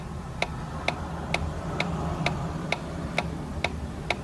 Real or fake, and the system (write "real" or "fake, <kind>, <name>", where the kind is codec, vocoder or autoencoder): real